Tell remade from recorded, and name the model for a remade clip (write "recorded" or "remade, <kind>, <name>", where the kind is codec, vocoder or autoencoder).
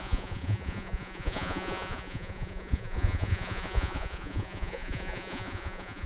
remade, vocoder, Vocos